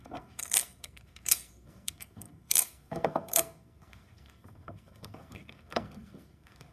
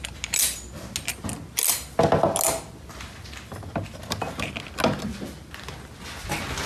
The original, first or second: second